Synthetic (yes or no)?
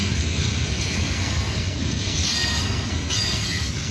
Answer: yes